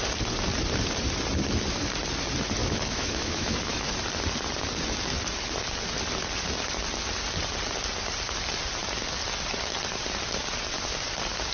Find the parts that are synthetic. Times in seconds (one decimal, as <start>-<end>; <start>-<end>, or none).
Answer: 2.6-3.9